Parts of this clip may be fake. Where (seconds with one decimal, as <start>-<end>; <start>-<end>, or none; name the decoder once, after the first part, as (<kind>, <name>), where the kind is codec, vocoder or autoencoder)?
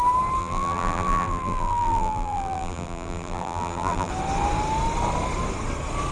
0.4-4.1 (vocoder, BigVGAN v2)